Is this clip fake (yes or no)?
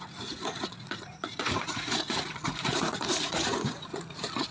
yes